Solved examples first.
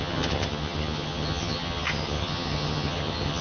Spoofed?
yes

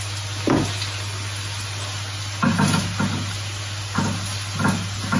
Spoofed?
no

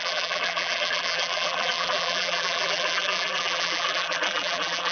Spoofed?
yes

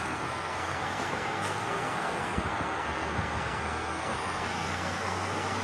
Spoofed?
yes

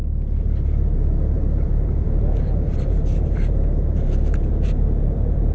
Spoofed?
yes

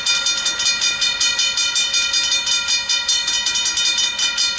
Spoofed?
no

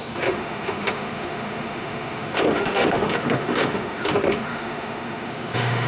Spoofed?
yes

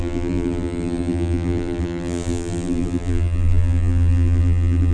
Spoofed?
yes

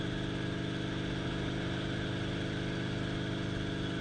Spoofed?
no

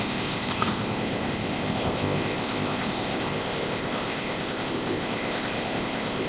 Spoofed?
yes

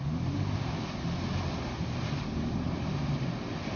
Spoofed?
no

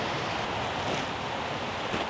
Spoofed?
no